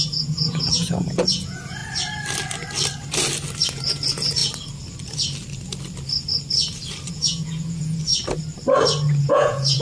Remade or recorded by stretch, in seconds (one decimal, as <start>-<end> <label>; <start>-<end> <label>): 0.0-1.8 remade; 1.8-3.7 recorded; 3.7-4.4 remade; 4.4-7.1 recorded; 7.1-8.1 remade; 8.1-9.3 recorded; 9.3-9.8 remade